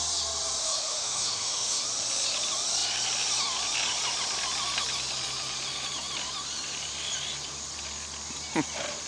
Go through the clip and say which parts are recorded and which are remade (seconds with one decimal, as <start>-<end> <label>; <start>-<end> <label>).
0.0-0.6 recorded; 0.6-1.8 remade; 1.8-9.1 recorded

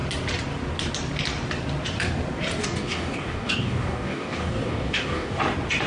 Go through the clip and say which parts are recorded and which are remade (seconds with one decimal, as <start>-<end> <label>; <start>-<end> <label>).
0.0-2.6 recorded; 2.6-5.4 remade; 5.4-5.9 recorded

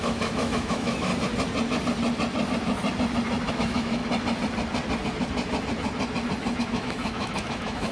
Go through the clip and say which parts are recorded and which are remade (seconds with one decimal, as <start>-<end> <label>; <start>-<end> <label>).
0.0-1.1 remade; 1.1-3.5 recorded; 3.5-4.0 remade; 4.0-6.6 recorded; 6.6-7.9 remade

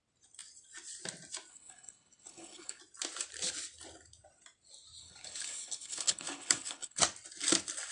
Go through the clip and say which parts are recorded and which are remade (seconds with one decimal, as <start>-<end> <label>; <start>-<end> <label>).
0.0-1.5 recorded; 1.5-2.8 remade; 2.8-5.0 recorded; 5.0-7.0 remade; 7.0-7.9 recorded

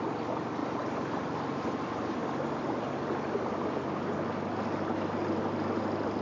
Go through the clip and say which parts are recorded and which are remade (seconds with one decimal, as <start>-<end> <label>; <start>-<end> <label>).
0.0-6.2 recorded

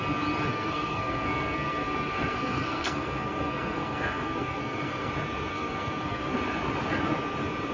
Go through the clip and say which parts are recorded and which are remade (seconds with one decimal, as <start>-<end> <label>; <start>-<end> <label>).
0.0-0.5 recorded; 0.5-5.1 remade; 5.1-5.5 recorded; 5.5-6.4 remade; 6.4-7.7 recorded

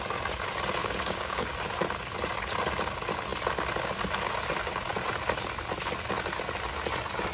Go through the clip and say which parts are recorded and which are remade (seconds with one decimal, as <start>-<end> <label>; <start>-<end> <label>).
0.0-0.8 recorded; 0.8-1.5 remade; 1.5-7.3 recorded

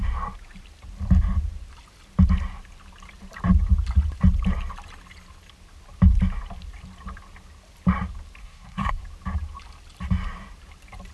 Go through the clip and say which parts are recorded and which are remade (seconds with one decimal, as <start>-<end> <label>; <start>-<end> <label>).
0.0-8.4 recorded; 8.4-9.0 remade; 9.0-11.1 recorded